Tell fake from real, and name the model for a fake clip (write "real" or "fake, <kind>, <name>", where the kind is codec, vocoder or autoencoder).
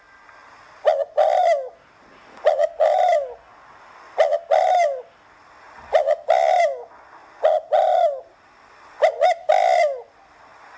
real